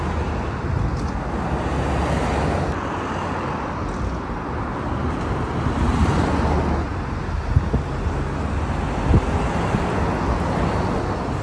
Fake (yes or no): no